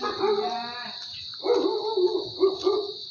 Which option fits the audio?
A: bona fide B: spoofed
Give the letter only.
A